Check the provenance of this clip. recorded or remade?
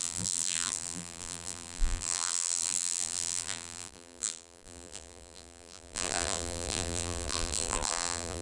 remade